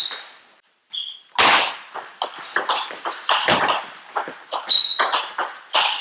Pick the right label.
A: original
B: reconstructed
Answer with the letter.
A